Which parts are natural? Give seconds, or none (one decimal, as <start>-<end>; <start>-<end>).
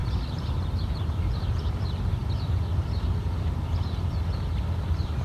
2.2-4.8